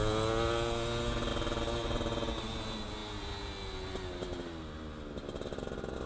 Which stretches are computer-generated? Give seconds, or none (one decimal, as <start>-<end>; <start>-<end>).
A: none